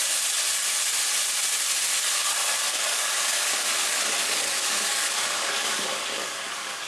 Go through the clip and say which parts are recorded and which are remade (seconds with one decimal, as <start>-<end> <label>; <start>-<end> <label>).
0.0-2.7 recorded; 2.7-6.9 remade

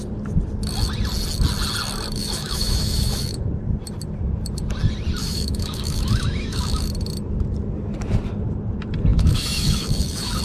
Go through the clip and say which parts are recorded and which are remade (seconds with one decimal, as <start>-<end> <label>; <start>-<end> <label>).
0.0-2.2 recorded; 2.2-3.4 remade; 3.4-5.2 recorded; 5.2-6.8 remade; 6.8-9.1 recorded; 9.1-10.4 remade

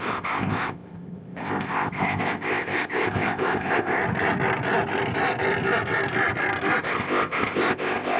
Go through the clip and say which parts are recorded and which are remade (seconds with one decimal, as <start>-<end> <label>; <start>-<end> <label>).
0.0-4.0 remade; 4.0-6.8 recorded; 6.8-8.2 remade

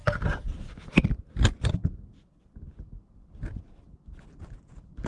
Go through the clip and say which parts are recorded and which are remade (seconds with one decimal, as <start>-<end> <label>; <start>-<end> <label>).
0.0-5.1 recorded

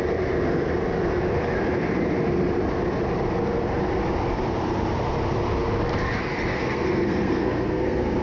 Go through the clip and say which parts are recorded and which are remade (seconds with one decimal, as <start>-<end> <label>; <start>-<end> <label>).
0.0-6.5 recorded; 6.5-8.2 remade